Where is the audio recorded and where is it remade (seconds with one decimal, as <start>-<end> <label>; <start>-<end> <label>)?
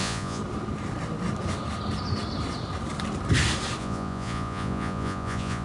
0.0-0.4 remade; 0.4-3.8 recorded; 3.8-5.6 remade